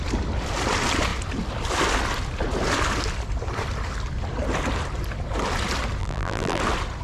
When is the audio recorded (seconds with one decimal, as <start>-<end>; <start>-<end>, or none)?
0.0-6.0; 6.6-7.0